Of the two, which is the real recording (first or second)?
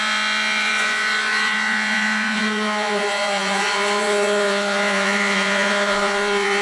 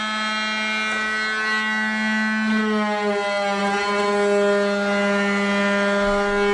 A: second